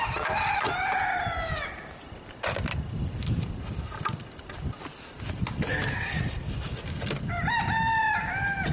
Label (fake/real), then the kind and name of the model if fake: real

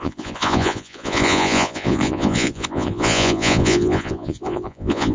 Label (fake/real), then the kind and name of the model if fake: fake, vocoder, Vocos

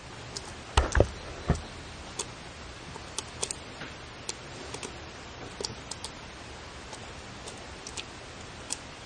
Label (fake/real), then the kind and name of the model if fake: real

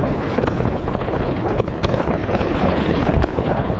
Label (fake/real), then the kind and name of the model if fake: fake, codec, HILCodec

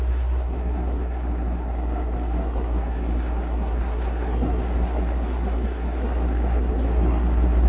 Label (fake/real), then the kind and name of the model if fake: fake, codec, SNAC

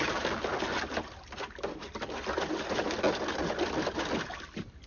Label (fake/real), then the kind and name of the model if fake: real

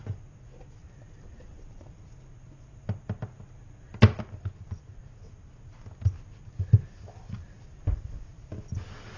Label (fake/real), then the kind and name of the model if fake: real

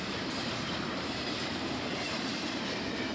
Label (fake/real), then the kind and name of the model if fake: fake, vocoder, BigVGAN v2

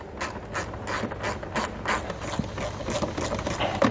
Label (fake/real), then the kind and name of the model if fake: real